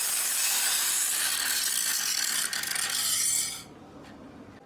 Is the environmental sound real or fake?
real